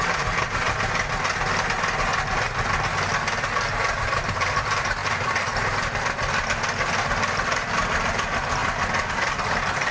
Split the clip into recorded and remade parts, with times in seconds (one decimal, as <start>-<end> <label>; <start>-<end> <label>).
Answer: 0.0-5.0 recorded; 5.0-7.7 remade; 7.7-9.9 recorded